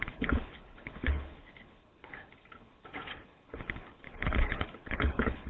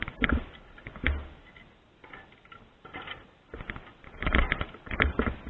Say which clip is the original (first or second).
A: second